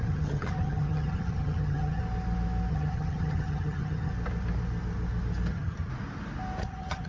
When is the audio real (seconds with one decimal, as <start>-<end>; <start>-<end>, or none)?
2.0-2.7; 4.1-5.5; 5.9-6.6